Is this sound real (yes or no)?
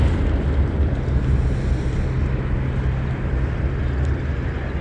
yes